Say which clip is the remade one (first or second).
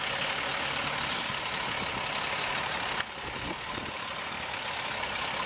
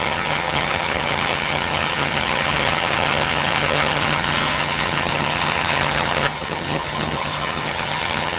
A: second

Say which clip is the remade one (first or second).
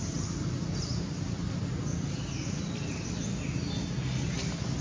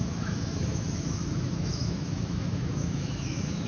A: second